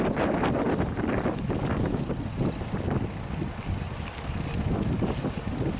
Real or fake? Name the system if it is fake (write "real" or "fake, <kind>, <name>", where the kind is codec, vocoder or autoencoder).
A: real